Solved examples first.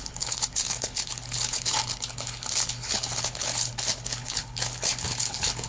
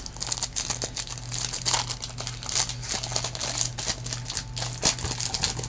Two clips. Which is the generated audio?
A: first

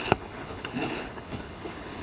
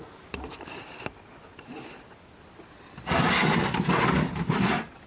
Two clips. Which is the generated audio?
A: first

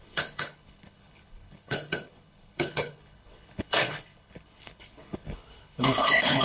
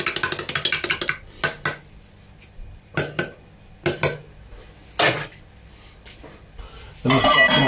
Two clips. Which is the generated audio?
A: first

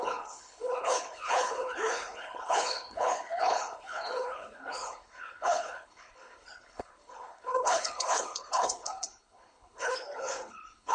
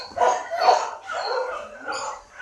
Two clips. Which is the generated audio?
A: first